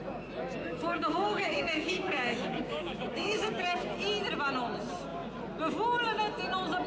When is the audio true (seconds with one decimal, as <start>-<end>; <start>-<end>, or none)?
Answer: 0.0-0.6; 3.9-6.9